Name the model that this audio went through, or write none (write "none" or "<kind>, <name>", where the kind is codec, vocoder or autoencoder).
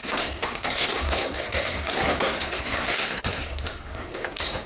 codec, SNAC